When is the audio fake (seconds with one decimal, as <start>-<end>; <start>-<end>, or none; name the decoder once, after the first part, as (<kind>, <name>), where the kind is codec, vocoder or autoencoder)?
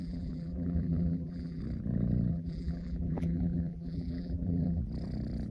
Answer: 0.0-1.6 (vocoder, BigVGAN v2); 2.3-4.8